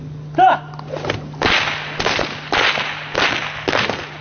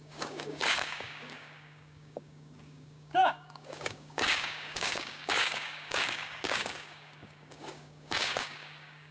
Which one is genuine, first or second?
first